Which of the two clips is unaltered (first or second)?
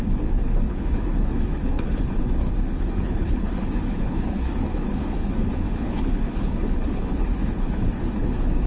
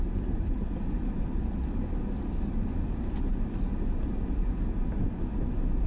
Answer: second